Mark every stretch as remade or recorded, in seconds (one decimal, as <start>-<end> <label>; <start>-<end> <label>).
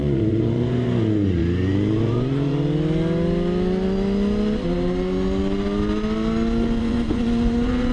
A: 0.0-1.4 remade; 1.4-2.0 recorded; 2.0-2.5 remade; 2.5-6.8 recorded; 6.8-7.9 remade